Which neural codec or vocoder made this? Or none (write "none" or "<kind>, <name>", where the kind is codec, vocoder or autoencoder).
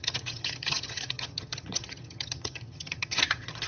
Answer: vocoder, HiFi-GAN